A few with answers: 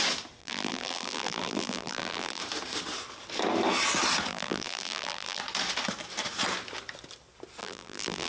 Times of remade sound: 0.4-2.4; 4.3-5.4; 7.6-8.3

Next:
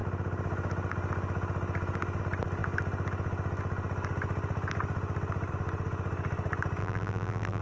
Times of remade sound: 6.8-7.6

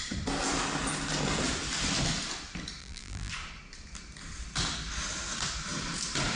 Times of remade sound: 2.8-3.3

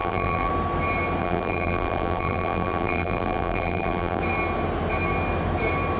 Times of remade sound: 0.0-0.5; 1.2-4.2

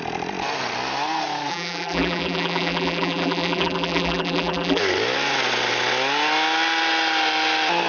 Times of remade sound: 1.5-4.8

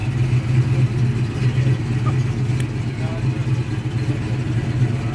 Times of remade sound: none

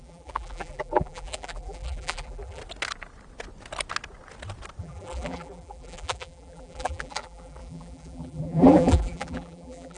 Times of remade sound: 0.0-2.6; 4.8-10.0

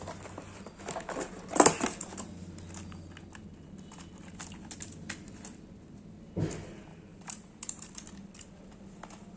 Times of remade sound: 6.9-7.9